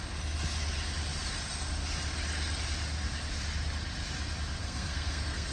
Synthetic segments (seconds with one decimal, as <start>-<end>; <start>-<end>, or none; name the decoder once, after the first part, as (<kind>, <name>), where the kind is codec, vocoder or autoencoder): 4.6-5.5 (codec, SNAC)